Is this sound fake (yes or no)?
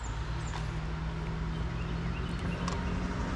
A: no